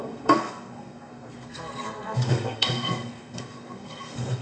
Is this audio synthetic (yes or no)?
yes